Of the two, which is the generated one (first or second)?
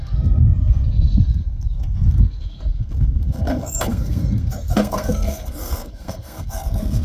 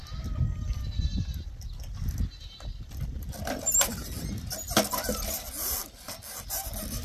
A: first